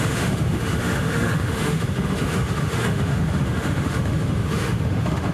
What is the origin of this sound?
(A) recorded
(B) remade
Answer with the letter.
B